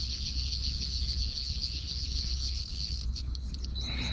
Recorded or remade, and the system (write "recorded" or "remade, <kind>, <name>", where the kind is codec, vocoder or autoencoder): remade, codec, HILCodec